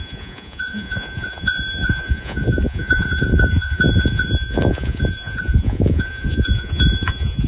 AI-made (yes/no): yes